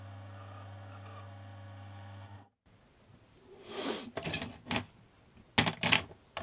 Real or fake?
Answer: real